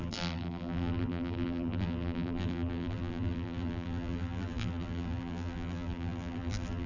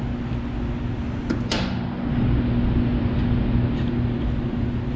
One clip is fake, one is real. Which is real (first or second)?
second